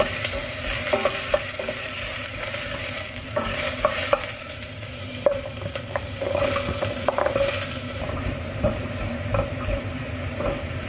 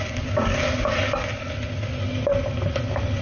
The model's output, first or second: first